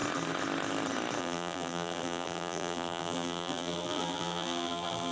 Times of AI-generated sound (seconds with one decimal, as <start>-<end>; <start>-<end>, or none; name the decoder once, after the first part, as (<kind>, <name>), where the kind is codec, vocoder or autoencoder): 1.2-5.1 (vocoder, BigVGAN v2)